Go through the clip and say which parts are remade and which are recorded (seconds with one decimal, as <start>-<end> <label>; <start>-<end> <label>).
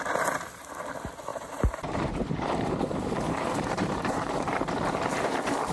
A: 0.0-1.3 recorded; 1.3-4.7 remade; 4.7-5.7 recorded